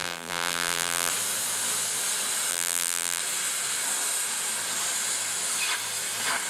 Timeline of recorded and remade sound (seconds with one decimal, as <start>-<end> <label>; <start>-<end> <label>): 0.0-1.1 remade; 1.1-2.5 recorded; 2.5-3.2 remade; 3.2-6.5 recorded